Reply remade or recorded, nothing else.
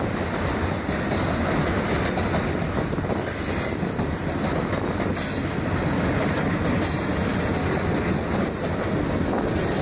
recorded